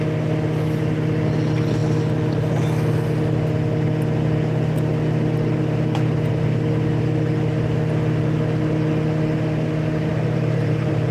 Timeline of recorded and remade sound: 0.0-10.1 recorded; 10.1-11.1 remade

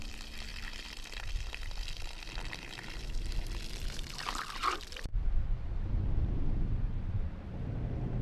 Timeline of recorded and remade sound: 0.0-0.5 recorded; 0.5-4.3 remade; 4.3-5.1 recorded; 5.1-6.8 remade; 6.8-8.2 recorded